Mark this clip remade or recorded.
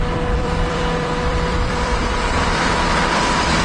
remade